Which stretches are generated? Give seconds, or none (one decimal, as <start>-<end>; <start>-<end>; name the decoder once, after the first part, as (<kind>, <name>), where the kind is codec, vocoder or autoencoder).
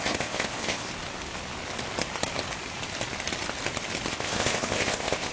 0.0-0.9 (codec, ZipCodec); 4.1-5.3